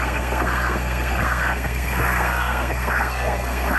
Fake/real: fake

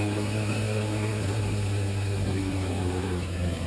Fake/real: fake